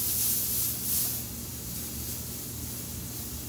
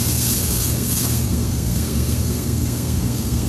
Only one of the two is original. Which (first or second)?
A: first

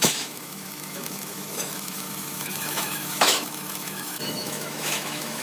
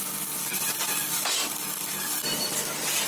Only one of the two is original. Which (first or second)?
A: second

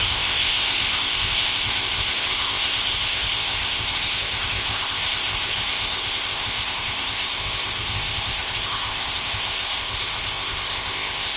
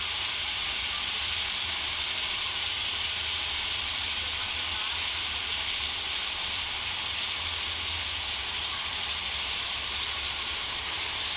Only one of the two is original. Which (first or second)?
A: second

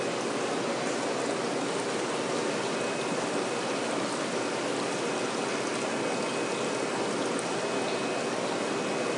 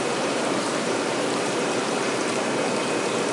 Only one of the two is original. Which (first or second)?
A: first